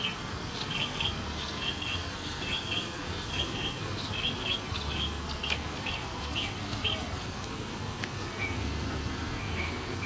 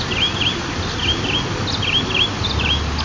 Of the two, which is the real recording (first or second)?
second